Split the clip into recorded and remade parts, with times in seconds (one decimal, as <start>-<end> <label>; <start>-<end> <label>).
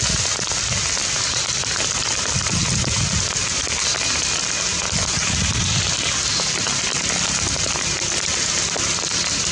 0.0-9.5 recorded